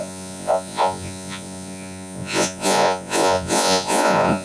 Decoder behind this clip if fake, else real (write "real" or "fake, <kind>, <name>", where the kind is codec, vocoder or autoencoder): fake, vocoder, Vocos